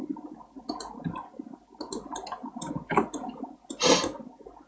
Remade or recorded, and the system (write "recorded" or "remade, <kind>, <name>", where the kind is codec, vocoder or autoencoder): recorded